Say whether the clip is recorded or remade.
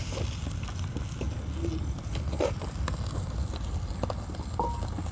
recorded